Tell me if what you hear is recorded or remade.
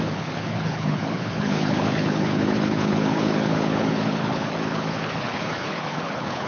remade